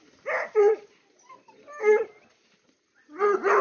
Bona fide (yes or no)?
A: yes